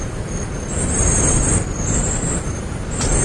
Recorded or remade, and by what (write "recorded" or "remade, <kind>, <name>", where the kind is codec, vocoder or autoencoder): recorded